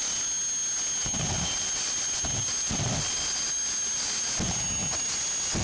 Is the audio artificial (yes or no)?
no